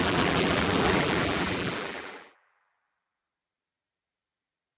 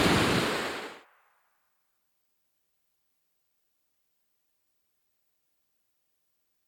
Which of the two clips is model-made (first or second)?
first